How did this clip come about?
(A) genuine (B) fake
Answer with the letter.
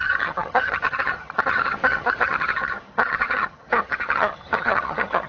B